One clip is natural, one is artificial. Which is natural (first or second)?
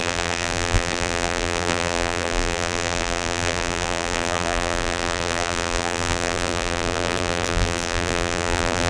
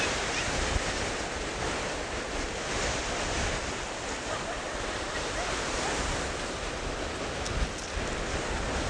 second